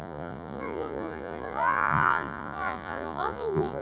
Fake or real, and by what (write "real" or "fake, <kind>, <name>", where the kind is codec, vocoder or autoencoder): fake, vocoder, Vocos